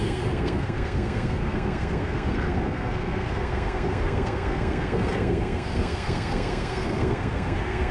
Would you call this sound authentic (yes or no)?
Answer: no